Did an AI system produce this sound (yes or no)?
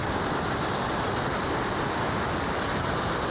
yes